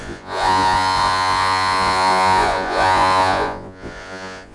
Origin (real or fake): fake